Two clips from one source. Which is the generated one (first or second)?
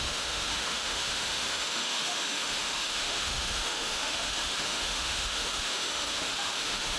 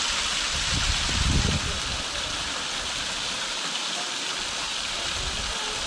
first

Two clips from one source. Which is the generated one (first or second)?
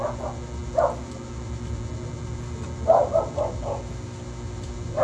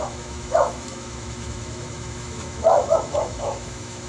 second